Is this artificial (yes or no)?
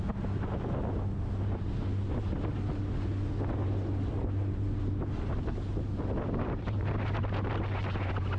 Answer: no